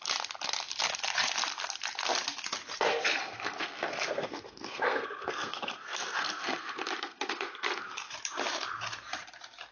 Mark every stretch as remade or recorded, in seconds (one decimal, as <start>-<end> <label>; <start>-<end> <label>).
0.0-2.9 recorded; 2.9-8.1 remade; 8.1-9.7 recorded